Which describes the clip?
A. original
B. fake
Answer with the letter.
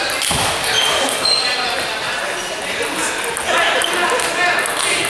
A